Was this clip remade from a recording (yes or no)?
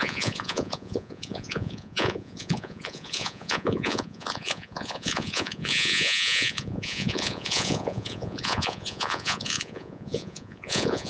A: yes